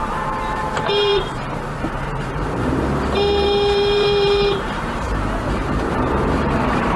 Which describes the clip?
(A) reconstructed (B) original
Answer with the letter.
A